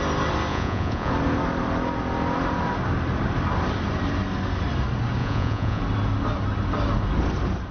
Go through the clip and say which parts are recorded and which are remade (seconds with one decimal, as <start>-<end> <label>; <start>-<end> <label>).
0.0-0.5 recorded; 0.5-1.1 remade; 1.1-5.2 recorded; 5.2-5.8 remade; 5.8-7.7 recorded